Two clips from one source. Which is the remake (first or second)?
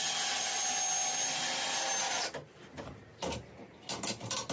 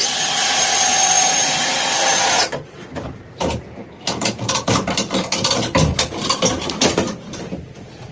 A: second